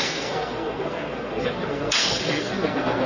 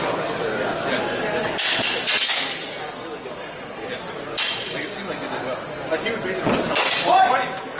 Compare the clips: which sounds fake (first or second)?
first